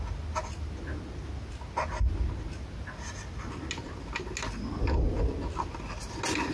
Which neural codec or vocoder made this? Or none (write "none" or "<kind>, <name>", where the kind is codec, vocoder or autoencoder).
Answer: none